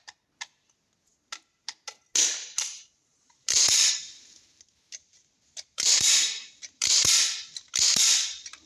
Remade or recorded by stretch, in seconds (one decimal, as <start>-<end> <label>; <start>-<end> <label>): 0.0-3.1 recorded; 3.1-7.1 remade; 7.1-8.7 recorded